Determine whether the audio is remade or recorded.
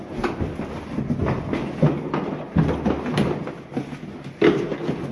recorded